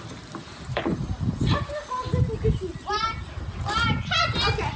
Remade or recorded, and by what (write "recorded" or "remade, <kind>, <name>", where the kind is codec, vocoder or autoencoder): recorded